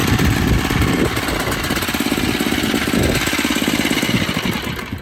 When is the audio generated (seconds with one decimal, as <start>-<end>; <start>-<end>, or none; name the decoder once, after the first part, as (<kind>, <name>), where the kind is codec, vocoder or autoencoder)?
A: none